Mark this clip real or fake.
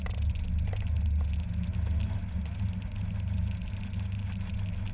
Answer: real